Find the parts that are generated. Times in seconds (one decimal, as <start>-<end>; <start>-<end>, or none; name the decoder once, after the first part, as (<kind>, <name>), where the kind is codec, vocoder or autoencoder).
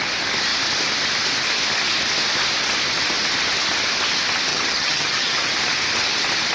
4.5-5.5 (vocoder, HiFi-GAN)